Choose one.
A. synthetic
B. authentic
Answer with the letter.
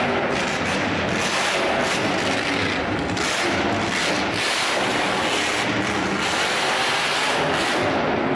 B